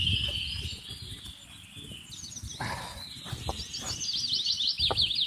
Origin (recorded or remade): recorded